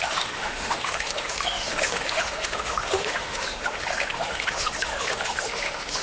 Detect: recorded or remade remade